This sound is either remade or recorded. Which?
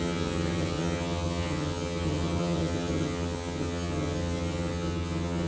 remade